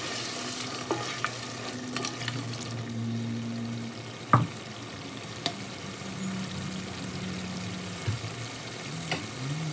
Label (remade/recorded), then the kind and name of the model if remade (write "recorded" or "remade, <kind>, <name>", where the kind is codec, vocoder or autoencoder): recorded